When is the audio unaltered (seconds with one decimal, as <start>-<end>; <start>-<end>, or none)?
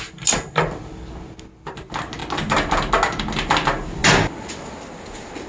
0.0-5.5